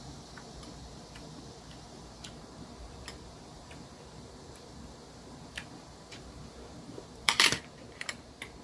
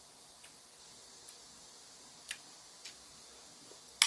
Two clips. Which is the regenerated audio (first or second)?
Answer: first